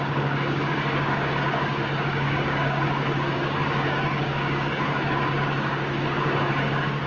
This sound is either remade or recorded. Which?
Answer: remade